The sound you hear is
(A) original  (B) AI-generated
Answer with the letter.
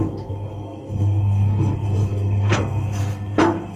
B